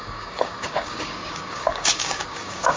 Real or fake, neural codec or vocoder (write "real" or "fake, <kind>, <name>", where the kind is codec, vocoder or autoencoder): fake, codec, DAC